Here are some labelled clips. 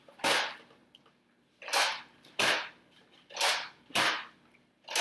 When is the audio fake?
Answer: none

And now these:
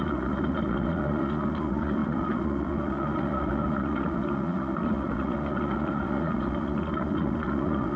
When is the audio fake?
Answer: 0.0-8.0 (vocoder, Vocos)

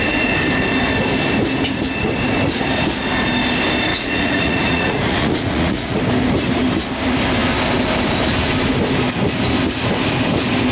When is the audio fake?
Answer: 3.9-6.0 (vocoder, Vocos)